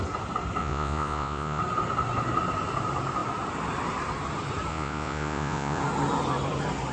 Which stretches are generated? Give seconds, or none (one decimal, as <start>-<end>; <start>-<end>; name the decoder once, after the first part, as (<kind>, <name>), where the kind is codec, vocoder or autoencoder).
0.6-1.6 (vocoder, Vocos); 4.7-5.8